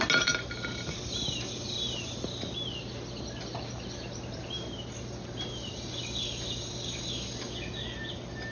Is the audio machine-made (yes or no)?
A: no